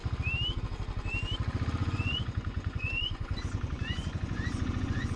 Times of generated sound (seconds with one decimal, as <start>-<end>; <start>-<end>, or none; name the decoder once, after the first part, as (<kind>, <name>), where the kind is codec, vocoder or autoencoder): 1.8-5.2 (vocoder, Vocos)